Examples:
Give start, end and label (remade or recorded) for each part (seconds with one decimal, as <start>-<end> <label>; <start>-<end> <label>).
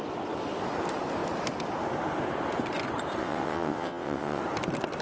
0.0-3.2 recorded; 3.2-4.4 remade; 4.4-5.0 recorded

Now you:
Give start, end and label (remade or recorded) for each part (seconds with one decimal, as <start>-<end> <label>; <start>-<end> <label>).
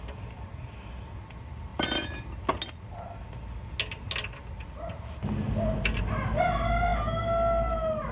0.0-8.1 recorded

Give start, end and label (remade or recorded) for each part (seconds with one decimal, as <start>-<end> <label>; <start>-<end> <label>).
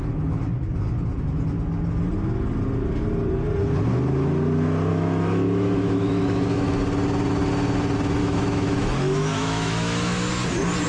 0.0-4.9 recorded; 4.9-6.8 remade; 6.8-8.2 recorded; 8.2-10.3 remade; 10.3-10.9 recorded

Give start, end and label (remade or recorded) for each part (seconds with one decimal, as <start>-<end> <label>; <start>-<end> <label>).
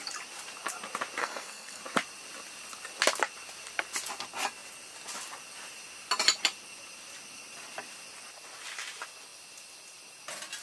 0.0-1.2 recorded; 1.2-1.8 remade; 1.8-10.6 recorded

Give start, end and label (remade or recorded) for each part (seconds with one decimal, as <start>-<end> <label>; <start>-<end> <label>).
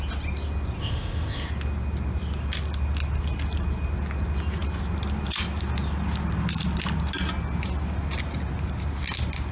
0.0-0.8 recorded; 0.8-1.5 remade; 1.5-9.5 recorded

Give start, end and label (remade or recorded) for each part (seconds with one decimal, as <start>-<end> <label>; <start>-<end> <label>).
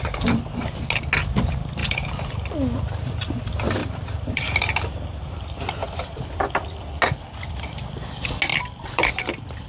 0.0-1.8 recorded; 1.8-2.3 remade; 2.3-3.8 recorded; 3.8-4.4 remade; 4.4-5.8 recorded; 5.8-6.5 remade; 6.5-8.5 recorded; 8.5-9.7 remade